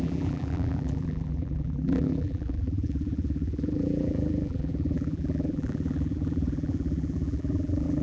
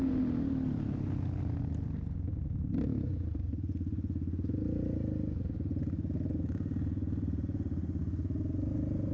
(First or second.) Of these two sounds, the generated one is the first